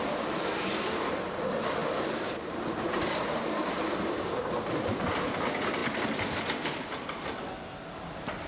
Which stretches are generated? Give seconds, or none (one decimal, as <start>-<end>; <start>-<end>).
1.8-3.9